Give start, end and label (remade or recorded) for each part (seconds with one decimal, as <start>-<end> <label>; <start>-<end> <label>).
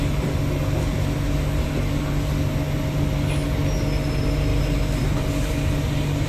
0.0-6.3 recorded